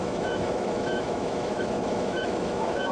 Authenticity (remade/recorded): remade